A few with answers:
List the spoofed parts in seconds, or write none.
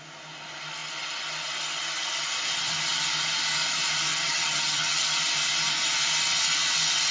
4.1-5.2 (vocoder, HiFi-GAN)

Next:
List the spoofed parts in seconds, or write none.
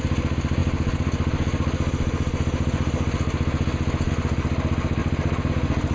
none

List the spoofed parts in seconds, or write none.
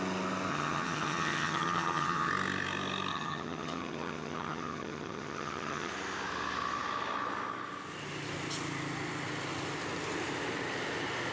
0.5-2.3 (vocoder, HiFi-GAN); 3.1-5.9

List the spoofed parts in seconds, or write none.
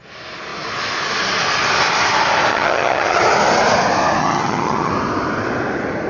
2.5-3.2 (vocoder, HiFi-GAN); 4.2-4.9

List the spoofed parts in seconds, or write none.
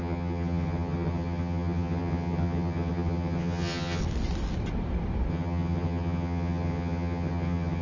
0.0-4.0 (vocoder, HiFi-GAN); 5.3-7.8